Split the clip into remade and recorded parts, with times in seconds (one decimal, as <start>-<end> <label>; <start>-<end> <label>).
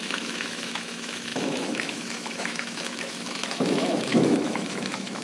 0.0-5.2 remade